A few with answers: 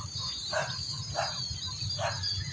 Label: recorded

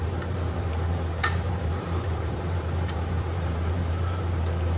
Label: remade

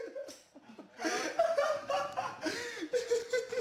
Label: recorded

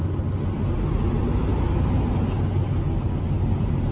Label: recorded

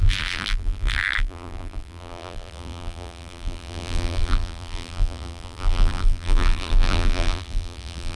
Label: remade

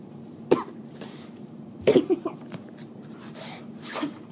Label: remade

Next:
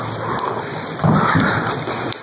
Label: recorded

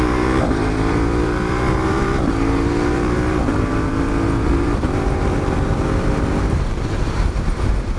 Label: remade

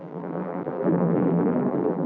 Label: remade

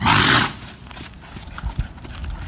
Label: remade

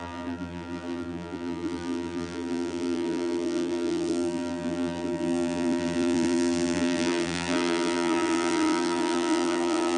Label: remade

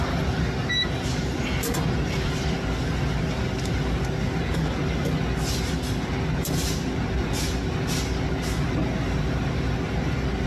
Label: recorded